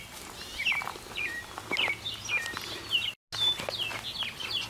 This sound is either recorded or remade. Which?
recorded